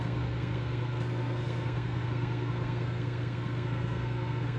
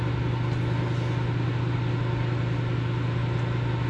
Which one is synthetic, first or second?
first